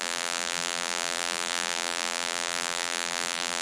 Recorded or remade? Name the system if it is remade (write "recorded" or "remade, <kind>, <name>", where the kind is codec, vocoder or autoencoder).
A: remade, vocoder, BigVGAN v2